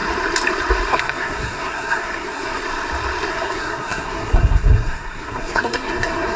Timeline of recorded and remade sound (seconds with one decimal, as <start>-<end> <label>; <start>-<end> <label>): 0.0-0.9 recorded; 0.9-2.6 remade; 2.6-3.3 recorded; 3.3-6.4 remade